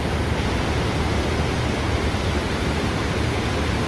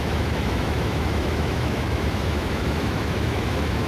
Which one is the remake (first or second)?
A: second